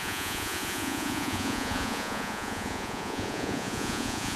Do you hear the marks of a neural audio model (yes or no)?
yes